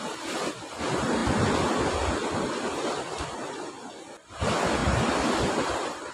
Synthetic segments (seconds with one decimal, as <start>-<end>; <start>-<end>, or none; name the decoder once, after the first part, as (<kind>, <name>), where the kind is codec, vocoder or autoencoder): 4.8-6.1 (vocoder, BigVGAN v2)